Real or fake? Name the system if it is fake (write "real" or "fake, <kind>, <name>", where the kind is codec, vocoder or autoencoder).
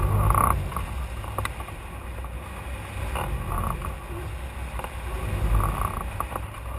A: real